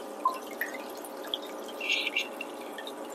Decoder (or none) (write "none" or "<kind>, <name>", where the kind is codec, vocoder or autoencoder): none